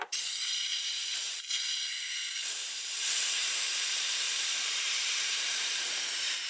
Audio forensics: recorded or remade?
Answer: remade